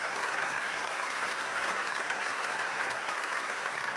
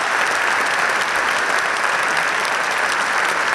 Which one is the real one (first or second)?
second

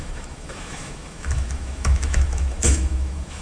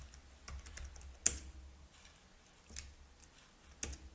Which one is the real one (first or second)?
second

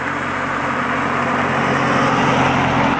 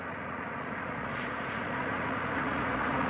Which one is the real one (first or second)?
first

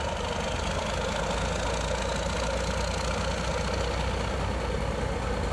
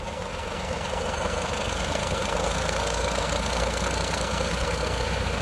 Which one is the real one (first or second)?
first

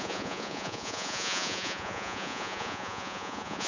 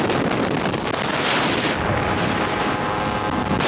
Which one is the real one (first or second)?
second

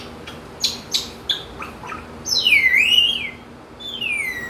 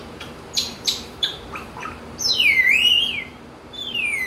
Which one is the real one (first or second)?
first